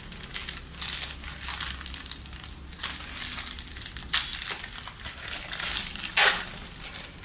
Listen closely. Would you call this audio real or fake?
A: real